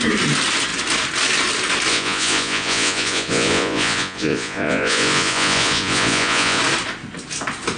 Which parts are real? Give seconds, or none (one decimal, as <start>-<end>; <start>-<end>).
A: 0.0-1.9; 6.6-7.8